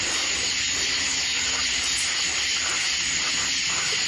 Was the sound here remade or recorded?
recorded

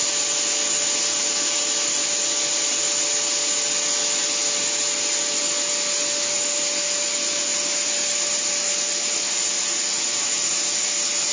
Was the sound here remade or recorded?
recorded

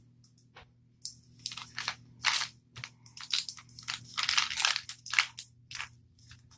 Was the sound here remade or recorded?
recorded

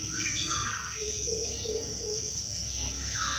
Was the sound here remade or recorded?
remade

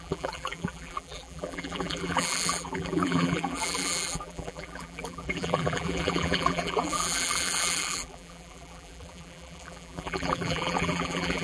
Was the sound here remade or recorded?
remade